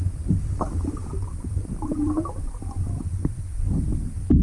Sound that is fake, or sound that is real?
real